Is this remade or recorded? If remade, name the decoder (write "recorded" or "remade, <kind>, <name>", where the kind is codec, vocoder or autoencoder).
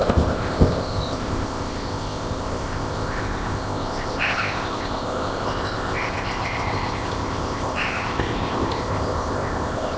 remade, codec, ZipCodec